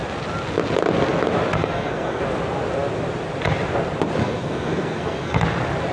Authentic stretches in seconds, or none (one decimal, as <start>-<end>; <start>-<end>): 0.0-1.6; 2.2-4.2; 5.4-5.9